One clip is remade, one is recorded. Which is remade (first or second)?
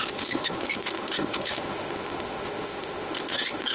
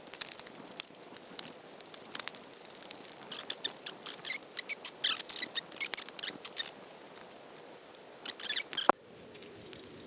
first